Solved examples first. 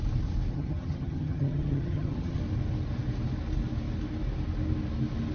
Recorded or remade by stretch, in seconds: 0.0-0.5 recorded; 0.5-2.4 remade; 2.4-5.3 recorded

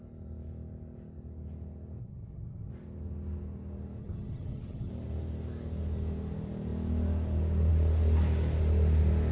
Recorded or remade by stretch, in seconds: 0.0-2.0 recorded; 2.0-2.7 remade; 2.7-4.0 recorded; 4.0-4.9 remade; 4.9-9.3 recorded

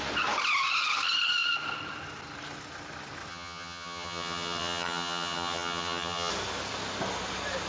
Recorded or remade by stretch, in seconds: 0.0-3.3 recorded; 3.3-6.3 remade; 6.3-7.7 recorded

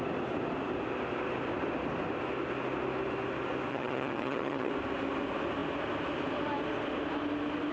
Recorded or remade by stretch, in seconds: 0.0-3.7 recorded; 3.7-4.7 remade; 4.7-7.7 recorded

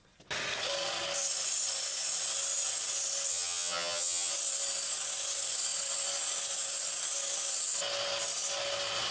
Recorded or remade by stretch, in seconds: 0.0-3.3 recorded; 3.3-4.3 remade; 4.3-9.1 recorded

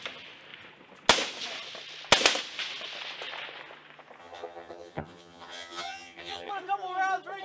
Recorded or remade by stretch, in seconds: 0.0-4.2 recorded; 4.2-6.5 remade; 6.5-7.4 recorded

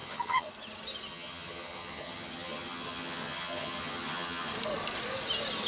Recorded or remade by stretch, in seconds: 0.0-0.5 remade; 0.5-1.1 recorded; 1.1-4.5 remade; 4.5-5.7 recorded

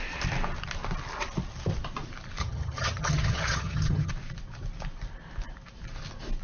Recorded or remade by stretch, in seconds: 0.0-2.4 recorded; 2.4-4.1 remade; 4.1-6.4 recorded